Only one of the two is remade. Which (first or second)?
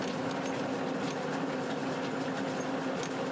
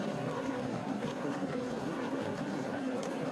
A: second